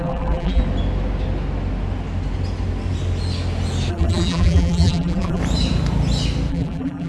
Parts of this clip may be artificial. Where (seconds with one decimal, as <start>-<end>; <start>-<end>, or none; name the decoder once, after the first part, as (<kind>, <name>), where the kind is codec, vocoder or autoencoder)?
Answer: 0.0-0.6 (vocoder, BigVGAN v2); 3.9-5.4; 6.5-7.1